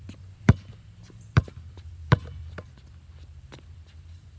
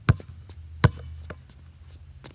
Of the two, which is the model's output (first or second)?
first